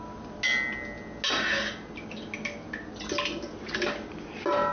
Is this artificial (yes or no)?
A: no